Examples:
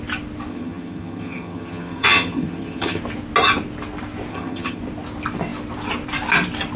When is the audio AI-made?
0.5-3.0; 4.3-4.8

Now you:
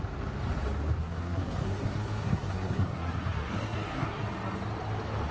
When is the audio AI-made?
1.0-4.2

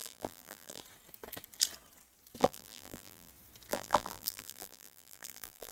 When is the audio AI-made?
0.0-0.8; 2.4-3.3; 3.7-5.7